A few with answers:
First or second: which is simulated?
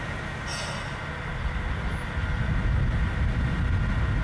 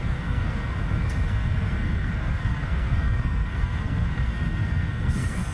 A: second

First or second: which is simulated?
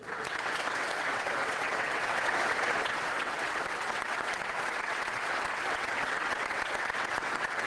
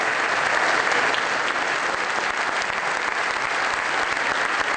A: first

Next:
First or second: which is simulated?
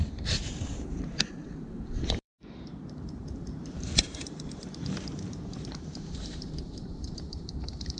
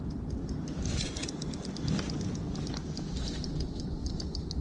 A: first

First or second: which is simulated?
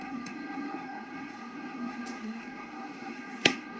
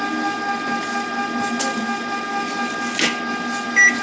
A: first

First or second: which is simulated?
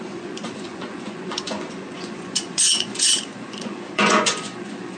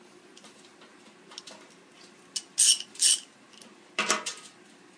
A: first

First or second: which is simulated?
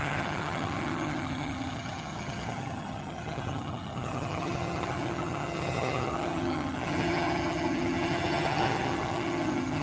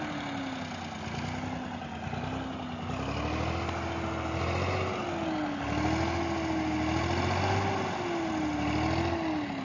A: first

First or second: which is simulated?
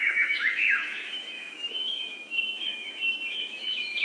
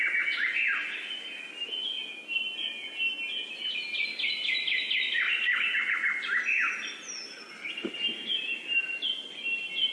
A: first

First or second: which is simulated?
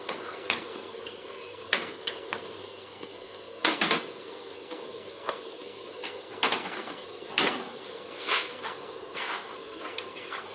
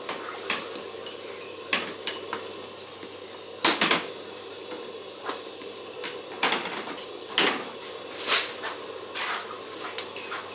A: first